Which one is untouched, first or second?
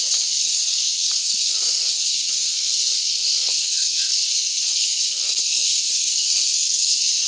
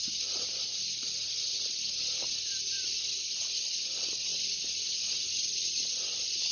second